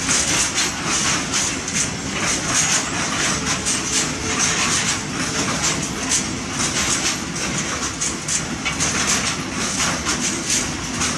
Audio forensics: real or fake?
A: real